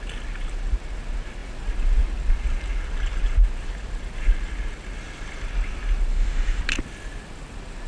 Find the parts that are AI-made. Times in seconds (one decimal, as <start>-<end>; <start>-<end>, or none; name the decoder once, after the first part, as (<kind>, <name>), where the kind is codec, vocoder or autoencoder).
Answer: 6.1-6.6 (autoencoder, DAC-VAE)